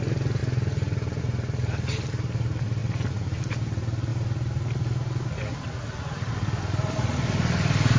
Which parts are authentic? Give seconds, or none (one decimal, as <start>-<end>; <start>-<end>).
0.4-1.2; 2.8-3.4

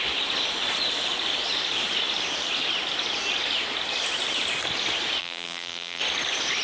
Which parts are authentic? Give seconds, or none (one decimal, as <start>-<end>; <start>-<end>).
0.0-5.2; 6.0-6.6

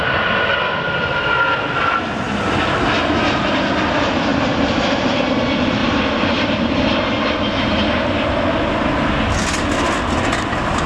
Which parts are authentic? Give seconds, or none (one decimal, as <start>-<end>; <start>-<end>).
0.0-4.3; 5.2-5.8; 6.8-10.9

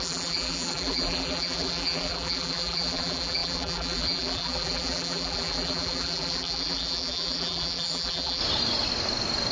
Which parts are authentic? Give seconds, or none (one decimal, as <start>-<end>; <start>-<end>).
8.4-9.5

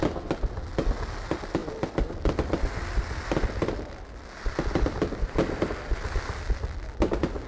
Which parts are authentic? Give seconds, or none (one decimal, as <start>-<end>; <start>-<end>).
0.0-1.6; 5.7-7.5